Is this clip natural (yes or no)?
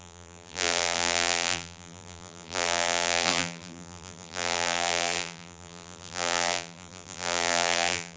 no